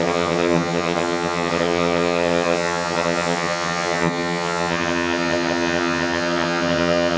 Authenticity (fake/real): fake